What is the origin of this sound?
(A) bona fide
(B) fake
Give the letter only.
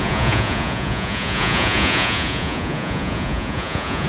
B